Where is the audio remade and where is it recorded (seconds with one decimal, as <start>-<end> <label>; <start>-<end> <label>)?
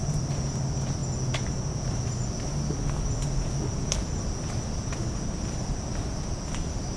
0.0-7.0 recorded